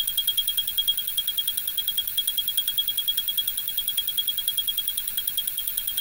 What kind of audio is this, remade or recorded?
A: recorded